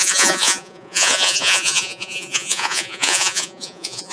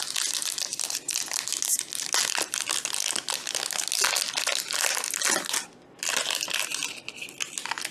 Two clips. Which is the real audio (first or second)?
second